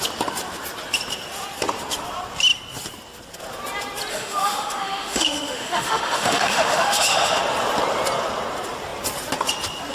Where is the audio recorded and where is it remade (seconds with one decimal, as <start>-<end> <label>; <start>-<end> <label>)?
0.0-4.1 recorded; 4.1-7.4 remade; 7.4-9.9 recorded